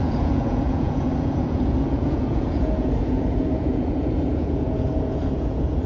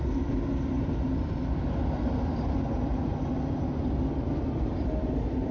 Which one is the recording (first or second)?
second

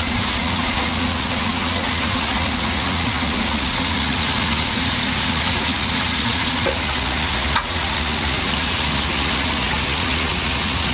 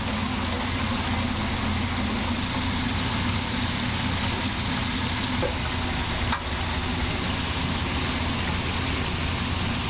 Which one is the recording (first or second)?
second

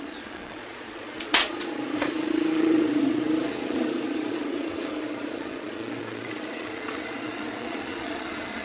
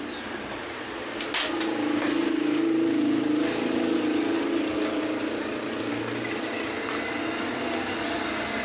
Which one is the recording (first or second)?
second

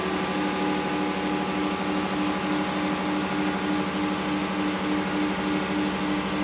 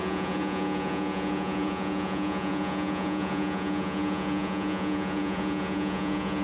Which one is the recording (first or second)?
first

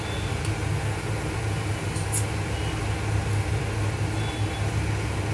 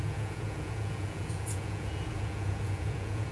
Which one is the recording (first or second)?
first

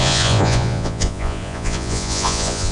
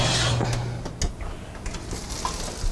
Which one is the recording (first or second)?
second